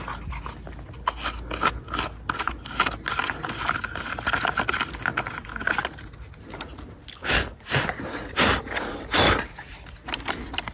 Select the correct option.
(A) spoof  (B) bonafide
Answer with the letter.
B